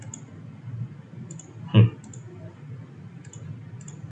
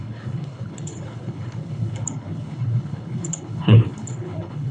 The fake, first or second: second